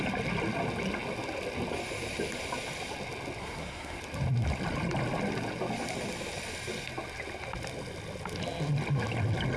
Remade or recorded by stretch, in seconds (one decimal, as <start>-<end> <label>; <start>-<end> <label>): 0.0-3.4 recorded; 3.4-4.0 remade; 4.0-9.6 recorded